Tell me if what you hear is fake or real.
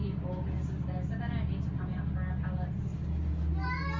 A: real